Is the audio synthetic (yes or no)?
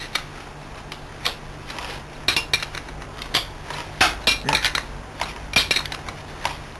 no